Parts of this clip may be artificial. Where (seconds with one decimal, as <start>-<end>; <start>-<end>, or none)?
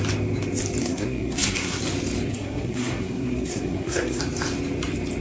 0.8-1.8; 2.3-4.2